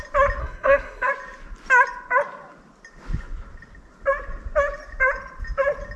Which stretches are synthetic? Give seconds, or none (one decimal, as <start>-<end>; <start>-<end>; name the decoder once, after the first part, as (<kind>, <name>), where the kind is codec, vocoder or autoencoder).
0.4-1.1 (codec, SNAC)